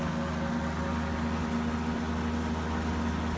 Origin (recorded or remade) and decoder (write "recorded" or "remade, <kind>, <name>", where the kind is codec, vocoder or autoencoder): recorded